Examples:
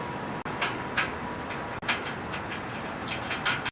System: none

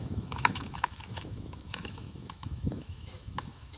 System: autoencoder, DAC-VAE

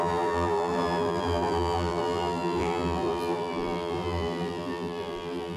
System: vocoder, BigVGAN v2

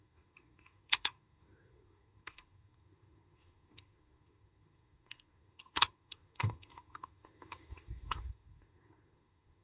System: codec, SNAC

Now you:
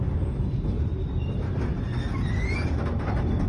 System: none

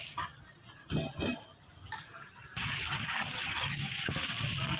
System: none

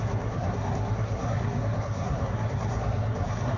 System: codec, SNAC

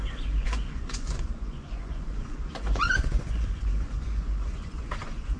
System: vocoder, Vocos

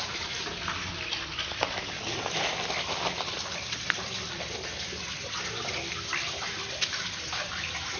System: none